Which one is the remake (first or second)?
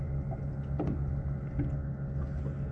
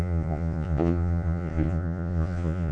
second